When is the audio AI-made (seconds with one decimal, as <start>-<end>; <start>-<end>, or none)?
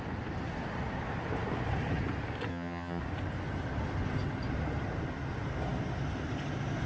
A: 2.5-3.0